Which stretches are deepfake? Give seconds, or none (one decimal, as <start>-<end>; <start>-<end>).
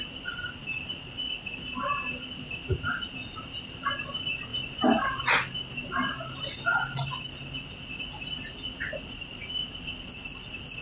none